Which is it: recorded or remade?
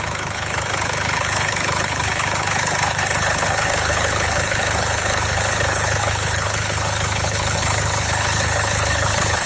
remade